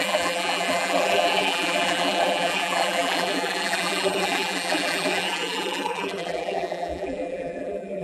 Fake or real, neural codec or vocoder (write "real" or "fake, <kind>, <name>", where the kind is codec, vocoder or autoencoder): fake, vocoder, BigVGAN v2